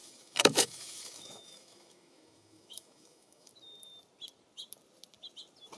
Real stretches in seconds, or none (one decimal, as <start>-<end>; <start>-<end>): 3.5-5.8